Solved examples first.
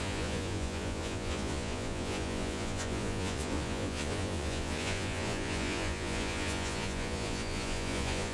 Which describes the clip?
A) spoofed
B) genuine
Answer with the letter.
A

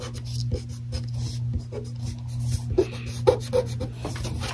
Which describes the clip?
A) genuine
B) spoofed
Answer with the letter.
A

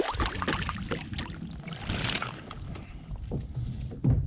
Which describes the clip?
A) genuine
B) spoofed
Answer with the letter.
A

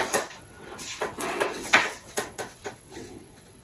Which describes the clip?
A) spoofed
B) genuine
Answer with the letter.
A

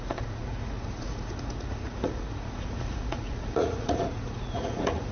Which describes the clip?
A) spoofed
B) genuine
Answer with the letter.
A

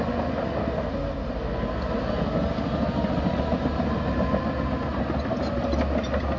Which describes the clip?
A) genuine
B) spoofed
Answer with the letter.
A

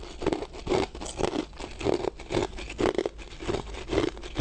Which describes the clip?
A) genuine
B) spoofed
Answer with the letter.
A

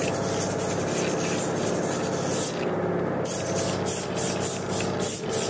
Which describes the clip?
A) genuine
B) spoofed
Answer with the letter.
A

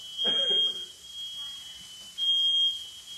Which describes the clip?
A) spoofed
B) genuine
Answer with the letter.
B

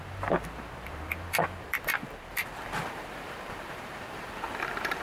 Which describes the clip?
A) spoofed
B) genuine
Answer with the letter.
A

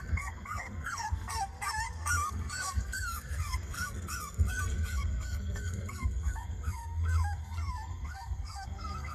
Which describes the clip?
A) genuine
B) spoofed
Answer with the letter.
B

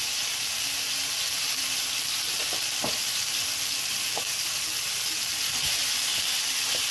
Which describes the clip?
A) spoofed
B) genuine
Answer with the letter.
B